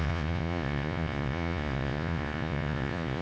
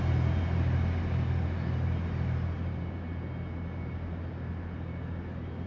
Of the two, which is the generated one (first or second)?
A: first